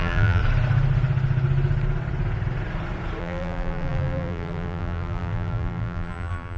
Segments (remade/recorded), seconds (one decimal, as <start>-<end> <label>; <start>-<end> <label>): 0.0-0.4 remade; 0.4-3.2 recorded; 3.2-6.6 remade